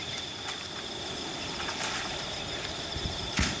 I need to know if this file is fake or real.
real